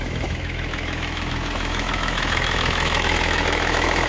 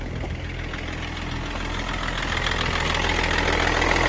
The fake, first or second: first